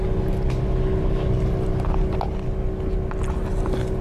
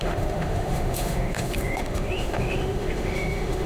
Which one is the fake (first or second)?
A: second